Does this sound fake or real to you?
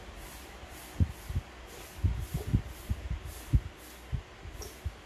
real